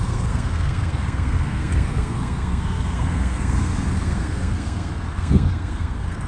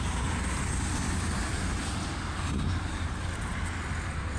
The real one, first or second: second